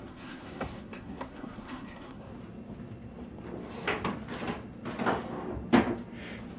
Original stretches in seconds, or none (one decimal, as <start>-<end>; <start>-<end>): 2.3-6.6